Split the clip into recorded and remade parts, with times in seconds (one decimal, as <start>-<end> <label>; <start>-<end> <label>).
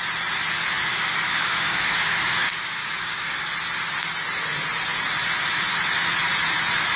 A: 0.0-0.9 recorded; 0.9-3.5 remade; 3.5-7.0 recorded